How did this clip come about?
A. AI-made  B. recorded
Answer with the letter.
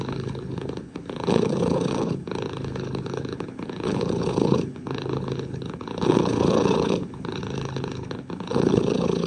A